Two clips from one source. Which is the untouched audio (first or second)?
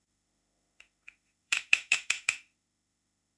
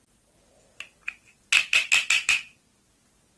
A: second